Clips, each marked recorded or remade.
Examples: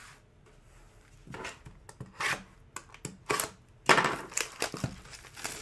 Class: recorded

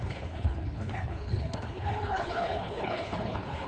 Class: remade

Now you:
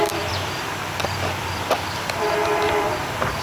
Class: remade